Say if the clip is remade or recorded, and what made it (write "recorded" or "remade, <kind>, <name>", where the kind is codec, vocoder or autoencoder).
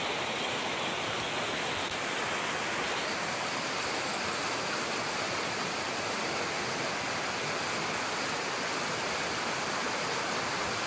recorded